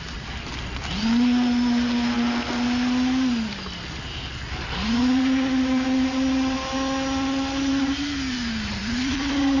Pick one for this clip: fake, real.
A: real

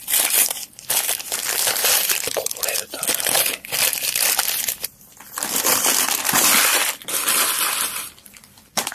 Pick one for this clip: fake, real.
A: fake